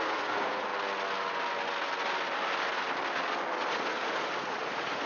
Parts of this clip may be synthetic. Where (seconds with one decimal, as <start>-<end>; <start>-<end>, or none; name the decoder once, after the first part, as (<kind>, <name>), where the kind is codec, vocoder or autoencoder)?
0.0-0.7 (vocoder, Vocos); 3.6-5.1